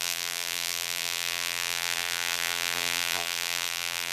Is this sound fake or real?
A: fake